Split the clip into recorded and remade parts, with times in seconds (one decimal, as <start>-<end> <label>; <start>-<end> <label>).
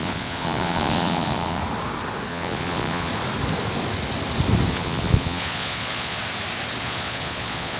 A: 0.0-1.6 remade; 1.6-2.3 recorded; 2.3-3.1 remade; 3.1-4.7 recorded; 4.7-6.2 remade; 6.2-6.8 recorded; 6.8-7.8 remade